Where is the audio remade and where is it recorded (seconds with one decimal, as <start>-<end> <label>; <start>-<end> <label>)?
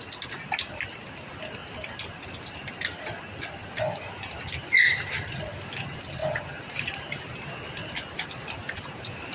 0.0-9.3 recorded